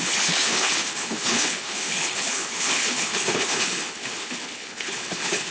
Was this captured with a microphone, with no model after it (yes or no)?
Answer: no